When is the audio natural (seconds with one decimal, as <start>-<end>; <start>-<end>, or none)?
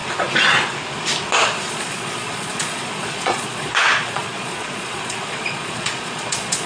0.0-1.7